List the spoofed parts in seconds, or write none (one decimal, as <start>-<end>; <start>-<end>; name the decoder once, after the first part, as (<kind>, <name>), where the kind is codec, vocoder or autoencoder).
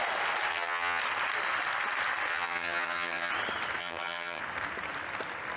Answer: 0.5-1.0 (vocoder, HiFi-GAN); 2.3-3.3; 3.8-4.4